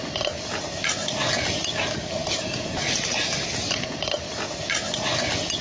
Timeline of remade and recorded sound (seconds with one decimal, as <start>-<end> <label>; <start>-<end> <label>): 0.0-5.6 recorded